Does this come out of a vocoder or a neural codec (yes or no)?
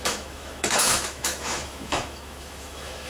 yes